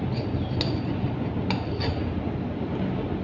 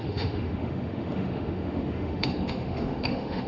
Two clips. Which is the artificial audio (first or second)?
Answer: second